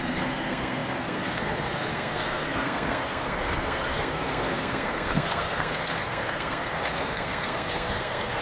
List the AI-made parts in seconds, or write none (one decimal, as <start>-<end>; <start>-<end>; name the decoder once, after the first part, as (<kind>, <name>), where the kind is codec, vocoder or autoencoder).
0.0-8.4 (codec, SNAC)

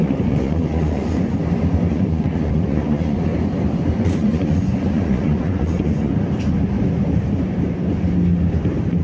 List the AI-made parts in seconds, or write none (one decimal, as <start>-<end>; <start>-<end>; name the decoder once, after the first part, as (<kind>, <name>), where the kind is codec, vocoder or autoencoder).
0.0-1.4 (vocoder, Vocos); 1.9-3.3; 4.0-6.1

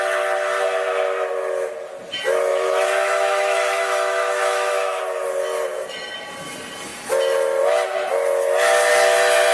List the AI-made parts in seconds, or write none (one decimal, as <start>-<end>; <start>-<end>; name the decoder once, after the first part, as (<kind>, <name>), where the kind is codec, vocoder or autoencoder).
2.5-5.0 (autoencoder, DAC-VAE)

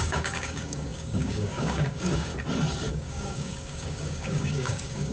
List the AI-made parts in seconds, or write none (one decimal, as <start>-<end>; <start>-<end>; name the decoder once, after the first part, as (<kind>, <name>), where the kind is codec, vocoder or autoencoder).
0.0-2.3 (codec, DAC); 2.9-5.1

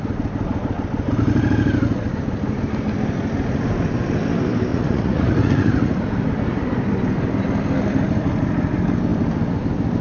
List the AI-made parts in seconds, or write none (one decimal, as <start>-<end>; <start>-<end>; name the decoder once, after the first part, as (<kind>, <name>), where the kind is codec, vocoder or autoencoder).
4.7-5.9 (vocoder, Vocos)